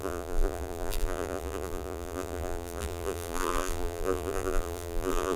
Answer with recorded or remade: remade